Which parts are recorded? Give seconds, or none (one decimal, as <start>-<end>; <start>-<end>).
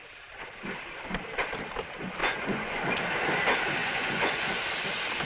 0.0-2.2; 2.8-3.8; 4.6-5.2